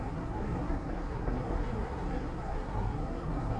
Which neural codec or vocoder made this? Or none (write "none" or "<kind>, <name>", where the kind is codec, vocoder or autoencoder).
codec, SNAC